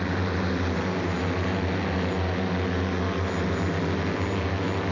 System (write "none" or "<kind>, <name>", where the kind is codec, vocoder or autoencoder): none